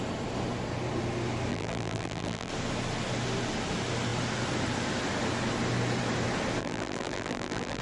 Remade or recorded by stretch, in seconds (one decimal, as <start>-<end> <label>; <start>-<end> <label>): 0.0-1.5 recorded; 1.5-2.5 remade; 2.5-6.6 recorded; 6.6-7.8 remade